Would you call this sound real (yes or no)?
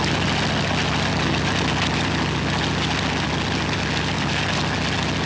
yes